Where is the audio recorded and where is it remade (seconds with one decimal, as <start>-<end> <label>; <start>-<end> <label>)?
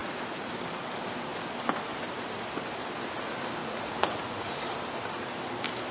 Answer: 0.0-0.5 remade; 0.5-3.6 recorded; 3.6-4.7 remade; 4.7-5.9 recorded